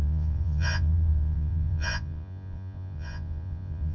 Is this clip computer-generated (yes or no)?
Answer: yes